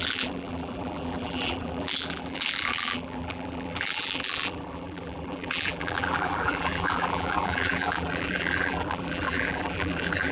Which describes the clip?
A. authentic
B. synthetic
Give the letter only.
B